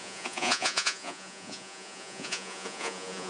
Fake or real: fake